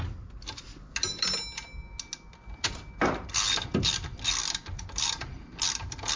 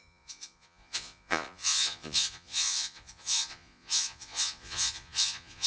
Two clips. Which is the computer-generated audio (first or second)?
second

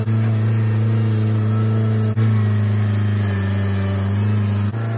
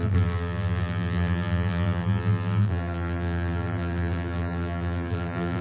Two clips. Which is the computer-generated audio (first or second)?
second